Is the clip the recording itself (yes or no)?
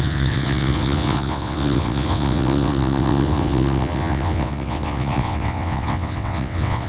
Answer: no